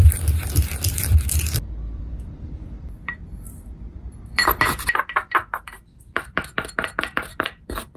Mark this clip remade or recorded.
remade